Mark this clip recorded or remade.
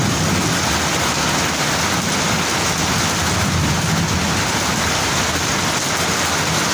recorded